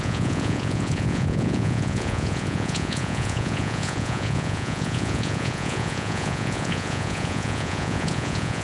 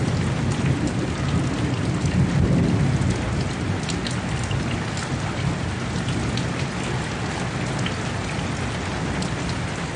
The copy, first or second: first